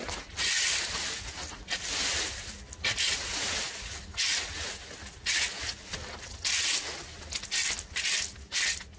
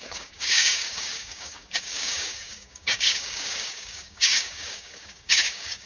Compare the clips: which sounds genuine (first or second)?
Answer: first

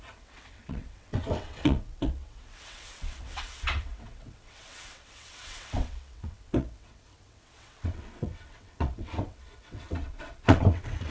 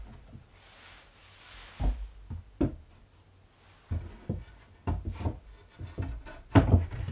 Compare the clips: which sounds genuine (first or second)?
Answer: second